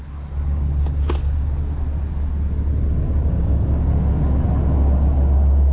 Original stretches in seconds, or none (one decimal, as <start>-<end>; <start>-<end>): 0.0-3.2; 3.9-5.7